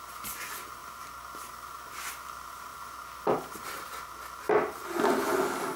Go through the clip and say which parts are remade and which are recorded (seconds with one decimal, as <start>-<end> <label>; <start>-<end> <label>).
0.0-5.8 recorded